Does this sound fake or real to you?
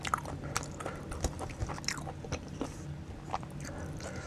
real